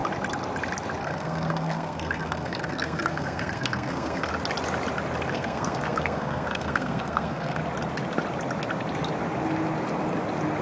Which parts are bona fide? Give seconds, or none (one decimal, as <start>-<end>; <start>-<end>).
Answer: 0.0-1.0; 4.3-5.3; 7.6-10.6